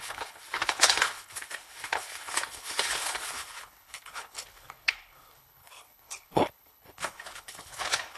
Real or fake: fake